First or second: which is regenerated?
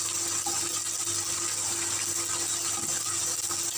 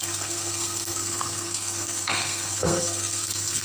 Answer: second